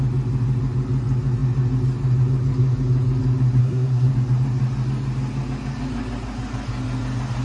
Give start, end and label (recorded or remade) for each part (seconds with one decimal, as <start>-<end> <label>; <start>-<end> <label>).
0.0-3.6 recorded; 3.6-4.1 remade; 4.1-7.4 recorded

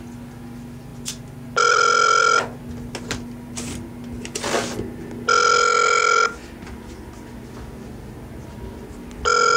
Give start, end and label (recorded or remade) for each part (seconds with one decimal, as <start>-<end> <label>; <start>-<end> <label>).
0.0-9.6 recorded

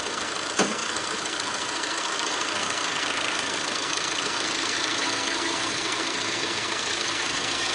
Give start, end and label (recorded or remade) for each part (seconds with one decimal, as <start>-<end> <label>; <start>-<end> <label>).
0.0-7.7 remade

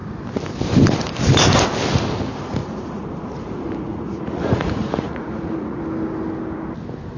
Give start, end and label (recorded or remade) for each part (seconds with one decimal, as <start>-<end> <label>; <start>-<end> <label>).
0.0-2.6 recorded; 2.6-5.8 remade; 5.8-7.2 recorded

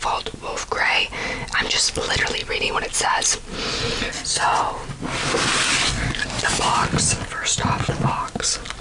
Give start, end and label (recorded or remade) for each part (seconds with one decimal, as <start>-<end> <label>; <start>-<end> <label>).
0.0-8.8 recorded

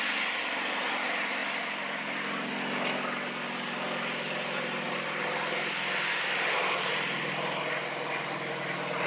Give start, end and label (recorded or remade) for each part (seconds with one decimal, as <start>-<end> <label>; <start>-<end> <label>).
0.0-9.1 recorded

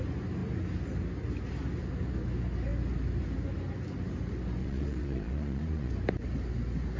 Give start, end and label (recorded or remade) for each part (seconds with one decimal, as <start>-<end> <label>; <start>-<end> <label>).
0.0-4.6 recorded; 4.6-5.9 remade; 5.9-7.0 recorded